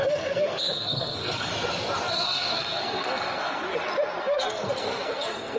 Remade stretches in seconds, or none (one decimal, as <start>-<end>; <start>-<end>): 0.0-1.5; 2.1-3.6; 4.2-5.6